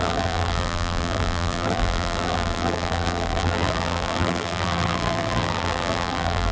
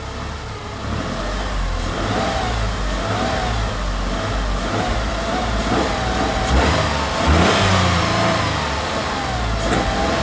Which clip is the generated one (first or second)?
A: first